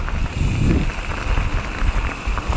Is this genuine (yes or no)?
yes